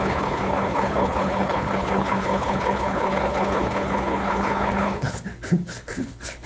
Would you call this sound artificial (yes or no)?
yes